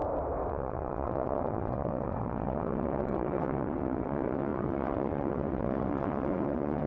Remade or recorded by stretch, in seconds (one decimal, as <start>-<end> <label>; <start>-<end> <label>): 0.0-0.5 recorded; 0.5-6.9 remade